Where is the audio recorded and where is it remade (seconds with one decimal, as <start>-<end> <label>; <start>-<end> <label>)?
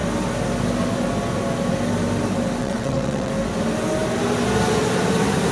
0.0-2.6 recorded; 2.6-3.3 remade; 3.3-5.5 recorded